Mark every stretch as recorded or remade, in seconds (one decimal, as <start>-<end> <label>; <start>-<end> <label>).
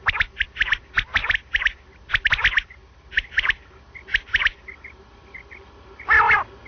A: 0.0-6.7 recorded